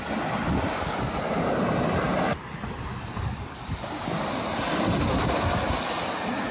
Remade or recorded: recorded